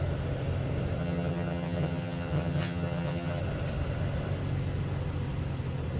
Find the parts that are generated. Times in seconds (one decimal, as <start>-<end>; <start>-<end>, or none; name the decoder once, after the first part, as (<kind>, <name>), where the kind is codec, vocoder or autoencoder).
1.0-3.4 (vocoder, HiFi-GAN)